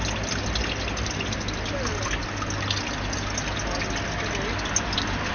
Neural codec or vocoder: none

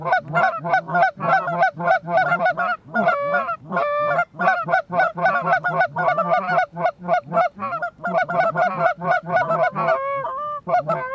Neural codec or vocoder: none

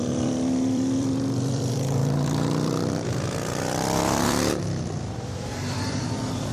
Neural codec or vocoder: vocoder, BigVGAN v2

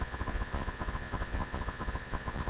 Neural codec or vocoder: vocoder, Vocos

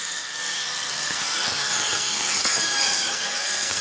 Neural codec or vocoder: codec, SNAC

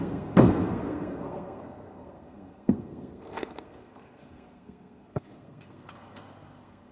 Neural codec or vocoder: codec, SNAC